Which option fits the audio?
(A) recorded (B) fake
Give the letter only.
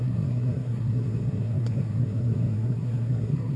B